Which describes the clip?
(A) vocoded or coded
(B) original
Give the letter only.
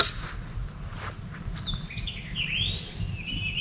B